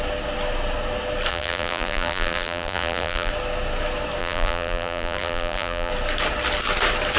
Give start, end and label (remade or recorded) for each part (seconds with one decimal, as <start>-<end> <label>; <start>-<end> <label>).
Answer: 0.0-1.3 recorded; 1.3-3.3 remade; 3.3-4.2 recorded; 4.2-5.9 remade; 5.9-7.2 recorded